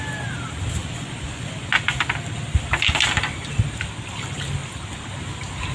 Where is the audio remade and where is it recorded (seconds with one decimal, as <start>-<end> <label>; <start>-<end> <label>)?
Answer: 0.0-0.8 recorded; 0.8-1.7 remade; 1.7-5.7 recorded